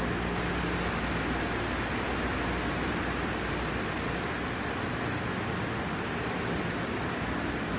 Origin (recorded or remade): recorded